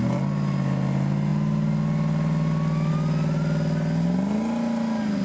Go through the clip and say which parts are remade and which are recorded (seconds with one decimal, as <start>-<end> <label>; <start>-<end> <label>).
0.0-5.2 recorded